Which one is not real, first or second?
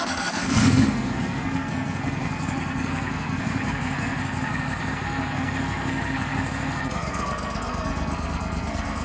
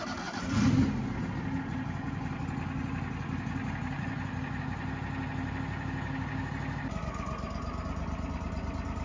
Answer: first